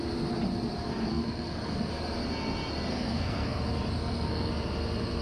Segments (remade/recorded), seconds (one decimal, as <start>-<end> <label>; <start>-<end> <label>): 0.0-1.1 recorded; 1.1-1.9 remade; 1.9-2.9 recorded; 2.9-3.6 remade; 3.6-4.0 recorded; 4.0-4.5 remade; 4.5-5.2 recorded